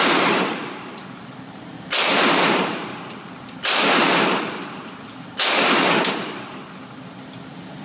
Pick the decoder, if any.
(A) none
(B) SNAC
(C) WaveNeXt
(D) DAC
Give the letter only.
A